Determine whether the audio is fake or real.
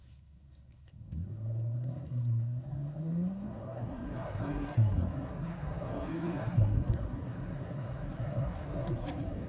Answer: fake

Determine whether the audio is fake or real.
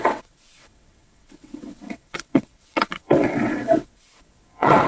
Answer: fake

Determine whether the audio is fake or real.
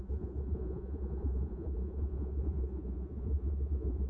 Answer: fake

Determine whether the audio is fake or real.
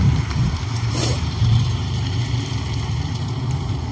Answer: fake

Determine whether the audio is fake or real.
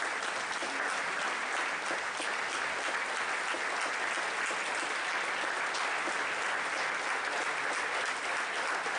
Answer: real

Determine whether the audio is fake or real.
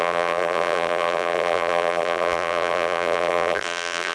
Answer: fake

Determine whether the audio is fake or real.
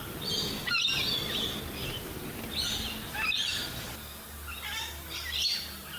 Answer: real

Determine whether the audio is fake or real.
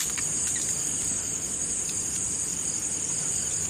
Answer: real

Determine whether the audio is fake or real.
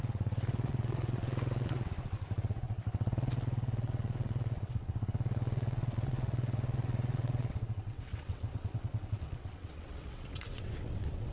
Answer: fake